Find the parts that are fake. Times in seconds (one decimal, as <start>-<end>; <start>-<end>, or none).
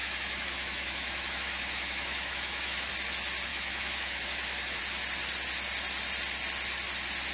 0.0-2.9; 3.5-4.8